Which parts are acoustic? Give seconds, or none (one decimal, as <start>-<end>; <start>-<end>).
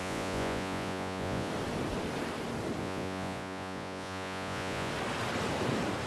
1.5-2.8; 4.9-6.1